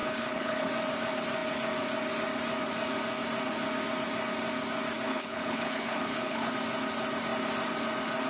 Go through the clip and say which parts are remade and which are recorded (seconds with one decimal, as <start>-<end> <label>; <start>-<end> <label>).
0.0-0.7 remade; 0.7-5.1 recorded; 5.1-6.5 remade; 6.5-8.3 recorded